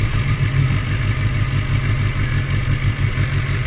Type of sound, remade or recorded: recorded